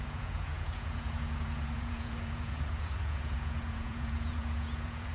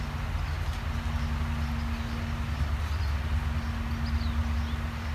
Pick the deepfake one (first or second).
first